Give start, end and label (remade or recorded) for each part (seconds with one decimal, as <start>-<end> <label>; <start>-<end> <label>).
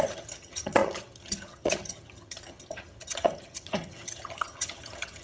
0.0-5.2 remade